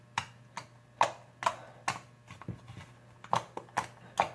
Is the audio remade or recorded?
recorded